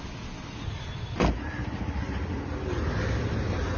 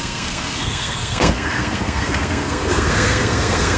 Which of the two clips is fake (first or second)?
second